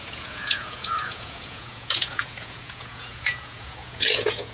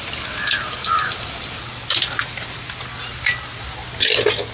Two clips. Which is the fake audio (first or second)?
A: first